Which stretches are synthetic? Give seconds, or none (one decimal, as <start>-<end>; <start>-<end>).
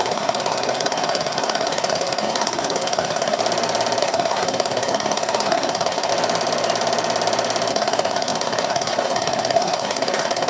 0.0-3.4; 4.0-6.1; 7.7-10.5